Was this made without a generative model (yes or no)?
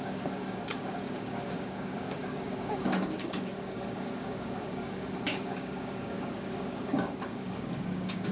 no